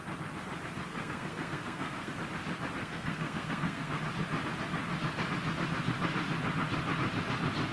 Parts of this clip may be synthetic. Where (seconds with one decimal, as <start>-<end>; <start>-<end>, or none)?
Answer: 0.9-2.1; 2.8-4.0